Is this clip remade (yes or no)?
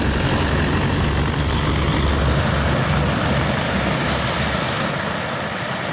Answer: no